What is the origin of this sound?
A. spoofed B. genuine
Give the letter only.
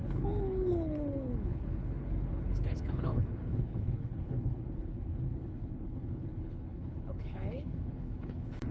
A